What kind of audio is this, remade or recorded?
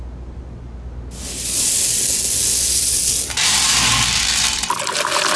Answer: recorded